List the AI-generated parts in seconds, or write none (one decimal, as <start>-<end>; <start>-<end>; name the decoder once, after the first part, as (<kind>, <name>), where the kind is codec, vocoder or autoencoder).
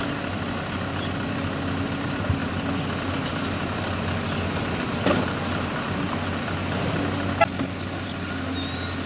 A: none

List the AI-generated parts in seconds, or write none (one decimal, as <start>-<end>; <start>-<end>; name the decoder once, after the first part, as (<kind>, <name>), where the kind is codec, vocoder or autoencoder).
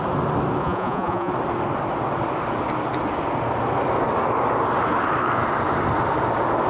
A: 0.6-1.3 (vocoder, Vocos)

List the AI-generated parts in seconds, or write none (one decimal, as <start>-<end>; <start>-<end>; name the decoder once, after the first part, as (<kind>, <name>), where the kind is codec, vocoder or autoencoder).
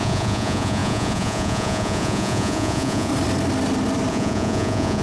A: 0.0-3.1 (vocoder, Vocos); 4.1-5.0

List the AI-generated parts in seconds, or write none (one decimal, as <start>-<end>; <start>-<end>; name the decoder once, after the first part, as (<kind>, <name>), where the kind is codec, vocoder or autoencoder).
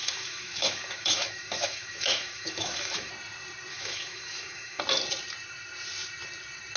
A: 0.0-3.1 (autoencoder, DAC-VAE); 3.7-4.8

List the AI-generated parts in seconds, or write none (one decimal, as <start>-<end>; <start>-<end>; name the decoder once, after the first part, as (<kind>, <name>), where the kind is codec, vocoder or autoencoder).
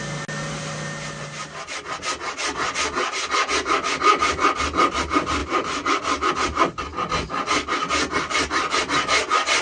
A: 5.4-6.3 (vocoder, BigVGAN v2)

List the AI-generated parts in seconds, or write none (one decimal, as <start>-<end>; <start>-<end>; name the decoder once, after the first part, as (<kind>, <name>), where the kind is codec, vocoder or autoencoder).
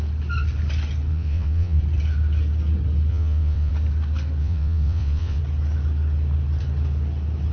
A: 1.1-1.8 (vocoder, WaveNeXt); 3.1-3.7; 4.4-5.4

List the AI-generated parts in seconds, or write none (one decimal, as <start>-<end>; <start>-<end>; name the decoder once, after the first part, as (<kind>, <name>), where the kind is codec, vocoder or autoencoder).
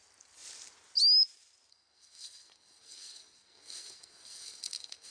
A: 1.7-5.1 (codec, SNAC)